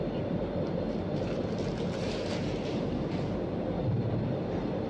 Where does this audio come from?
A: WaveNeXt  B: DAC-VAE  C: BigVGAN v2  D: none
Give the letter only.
C